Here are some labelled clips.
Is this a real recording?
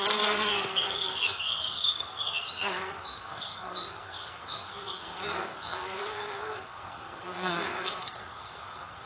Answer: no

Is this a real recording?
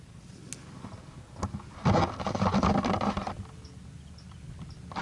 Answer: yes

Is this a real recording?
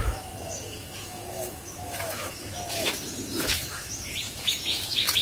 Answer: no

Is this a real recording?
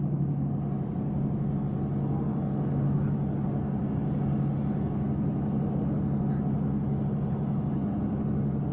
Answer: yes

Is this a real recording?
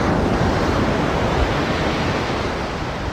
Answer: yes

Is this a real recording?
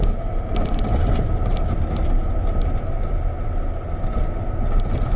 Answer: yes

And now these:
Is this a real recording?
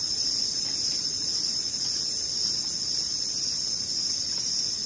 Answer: yes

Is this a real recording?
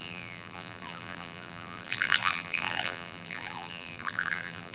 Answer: no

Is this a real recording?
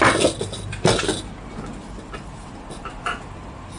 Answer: yes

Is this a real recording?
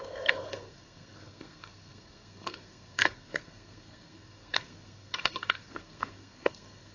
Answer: no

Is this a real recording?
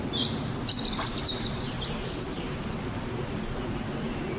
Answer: yes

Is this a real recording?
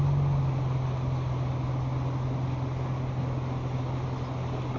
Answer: yes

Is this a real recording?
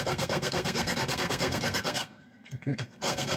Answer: no